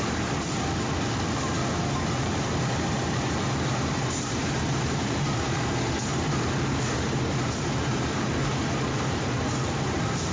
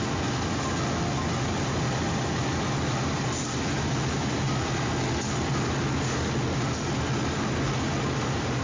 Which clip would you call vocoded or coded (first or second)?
first